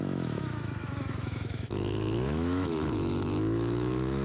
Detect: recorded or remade remade